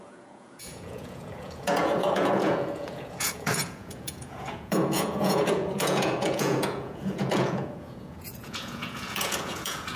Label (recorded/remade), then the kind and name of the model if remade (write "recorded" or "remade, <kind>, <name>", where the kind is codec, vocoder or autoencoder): remade, vocoder, Vocos